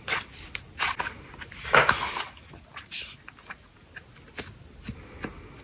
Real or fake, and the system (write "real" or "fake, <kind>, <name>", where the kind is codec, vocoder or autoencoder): real